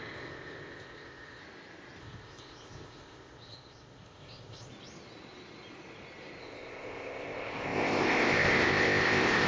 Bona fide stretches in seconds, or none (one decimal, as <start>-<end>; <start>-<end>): 1.4-2.0; 4.7-6.4